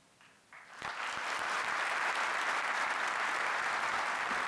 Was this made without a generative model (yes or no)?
yes